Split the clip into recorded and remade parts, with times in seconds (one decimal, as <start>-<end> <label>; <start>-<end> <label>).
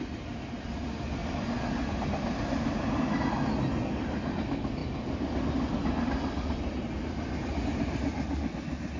0.0-9.0 recorded